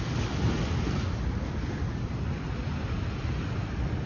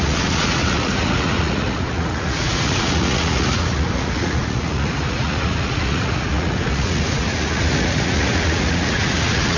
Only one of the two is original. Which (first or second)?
first